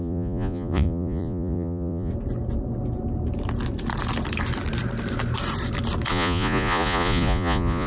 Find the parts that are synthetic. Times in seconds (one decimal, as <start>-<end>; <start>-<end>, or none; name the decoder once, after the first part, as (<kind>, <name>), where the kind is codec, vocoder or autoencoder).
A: 0.0-2.1 (vocoder, Vocos); 6.1-7.9